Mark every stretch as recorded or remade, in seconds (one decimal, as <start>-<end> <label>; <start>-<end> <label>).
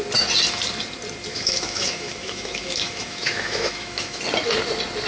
0.0-1.3 recorded; 1.3-4.2 remade; 4.2-5.1 recorded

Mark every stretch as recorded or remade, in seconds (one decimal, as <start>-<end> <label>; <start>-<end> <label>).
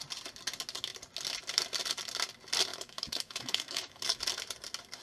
0.0-2.7 recorded; 2.7-4.2 remade; 4.2-5.0 recorded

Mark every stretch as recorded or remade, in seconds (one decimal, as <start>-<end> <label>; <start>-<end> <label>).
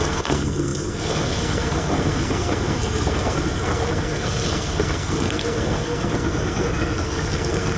0.0-7.8 remade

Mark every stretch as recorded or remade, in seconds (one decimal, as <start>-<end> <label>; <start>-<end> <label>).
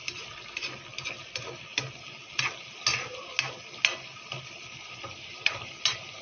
0.0-6.2 recorded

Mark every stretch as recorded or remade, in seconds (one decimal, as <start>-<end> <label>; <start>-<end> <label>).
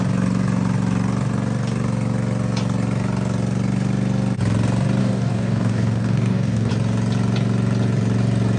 0.0-5.0 recorded; 5.0-6.7 remade; 6.7-8.6 recorded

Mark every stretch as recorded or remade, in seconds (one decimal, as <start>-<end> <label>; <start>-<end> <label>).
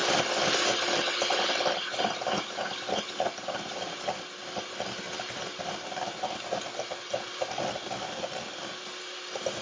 0.0-9.6 recorded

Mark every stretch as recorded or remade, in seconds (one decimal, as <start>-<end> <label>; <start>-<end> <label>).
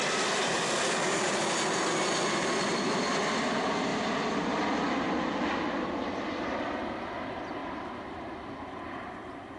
0.0-7.6 recorded; 7.6-9.6 remade